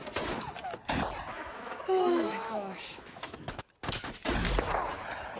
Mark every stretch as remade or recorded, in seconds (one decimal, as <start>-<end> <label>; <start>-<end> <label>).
0.0-1.3 recorded; 1.3-3.7 remade; 3.7-5.4 recorded